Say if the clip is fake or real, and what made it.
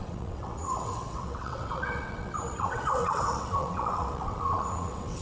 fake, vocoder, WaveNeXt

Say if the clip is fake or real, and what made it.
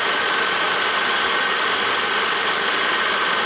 real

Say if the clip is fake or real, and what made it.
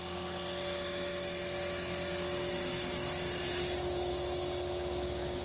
real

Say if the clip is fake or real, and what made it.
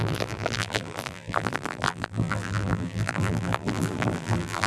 fake, vocoder, BigVGAN v2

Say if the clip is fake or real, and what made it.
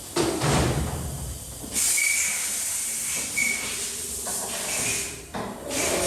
real